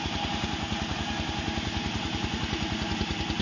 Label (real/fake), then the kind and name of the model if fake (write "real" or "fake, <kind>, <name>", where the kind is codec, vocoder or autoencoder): real